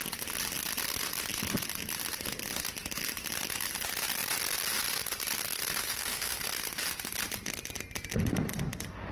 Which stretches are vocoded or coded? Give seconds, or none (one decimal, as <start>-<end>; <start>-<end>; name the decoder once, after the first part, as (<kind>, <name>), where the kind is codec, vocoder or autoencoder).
5.8-6.4 (autoencoder, DAC-VAE)